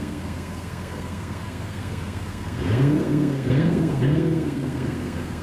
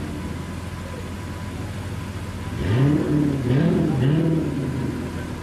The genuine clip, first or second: second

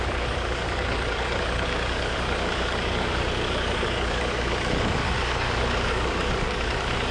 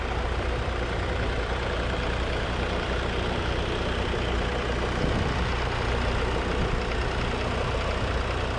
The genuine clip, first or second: second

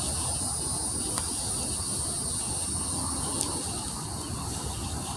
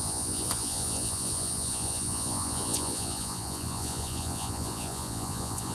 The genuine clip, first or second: first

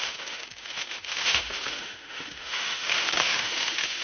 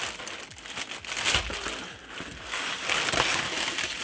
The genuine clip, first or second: second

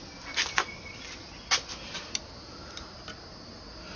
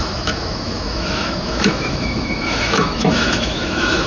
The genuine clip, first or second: first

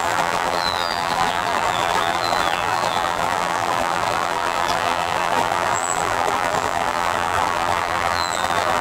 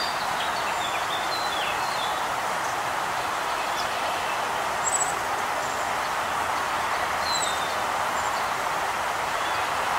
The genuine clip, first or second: second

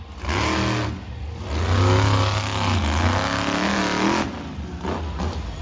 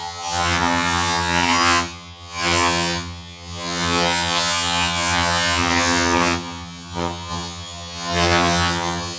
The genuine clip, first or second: first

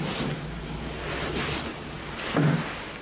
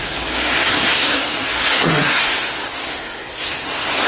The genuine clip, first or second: first